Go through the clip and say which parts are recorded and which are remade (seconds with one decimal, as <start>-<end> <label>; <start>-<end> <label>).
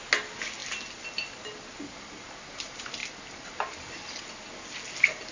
0.0-5.3 recorded